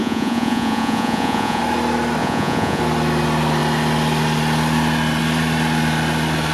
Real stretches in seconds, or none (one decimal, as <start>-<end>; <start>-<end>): 1.6-2.2; 2.8-6.5